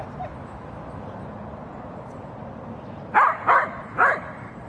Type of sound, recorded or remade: recorded